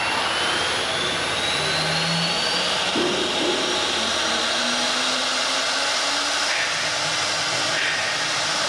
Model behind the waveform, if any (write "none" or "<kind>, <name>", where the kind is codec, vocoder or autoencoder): none